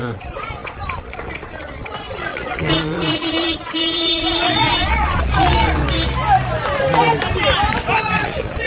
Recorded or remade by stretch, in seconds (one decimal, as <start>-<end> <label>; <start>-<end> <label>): 0.0-5.8 remade; 5.8-8.0 recorded; 8.0-8.7 remade